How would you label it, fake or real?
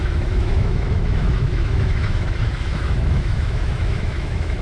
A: fake